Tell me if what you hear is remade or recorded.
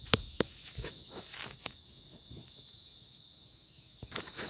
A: remade